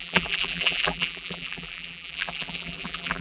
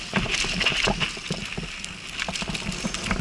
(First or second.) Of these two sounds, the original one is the second